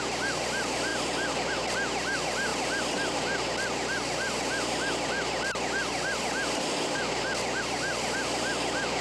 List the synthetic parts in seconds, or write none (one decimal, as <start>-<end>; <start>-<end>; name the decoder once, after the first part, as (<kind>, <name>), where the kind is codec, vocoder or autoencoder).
none